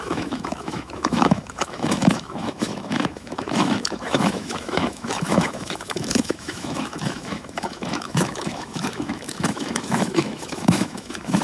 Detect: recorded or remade remade